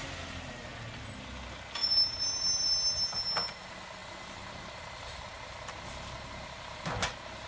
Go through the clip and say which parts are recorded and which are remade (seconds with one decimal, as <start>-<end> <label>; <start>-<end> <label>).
0.0-7.5 recorded